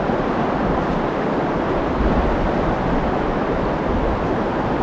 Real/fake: real